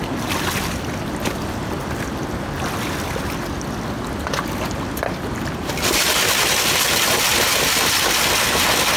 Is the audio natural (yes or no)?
yes